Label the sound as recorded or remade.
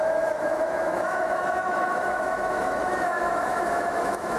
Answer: remade